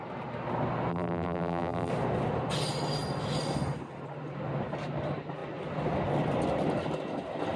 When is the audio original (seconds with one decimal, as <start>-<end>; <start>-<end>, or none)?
0.0-0.9; 1.9-7.6